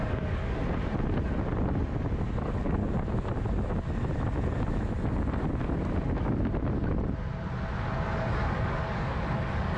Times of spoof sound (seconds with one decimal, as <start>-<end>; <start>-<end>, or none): 0.0-0.4; 2.2-2.8; 7.9-9.8